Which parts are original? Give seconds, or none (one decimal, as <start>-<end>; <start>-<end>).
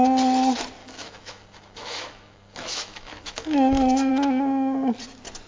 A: 0.0-0.8; 4.1-5.5